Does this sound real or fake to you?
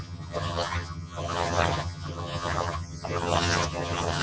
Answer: fake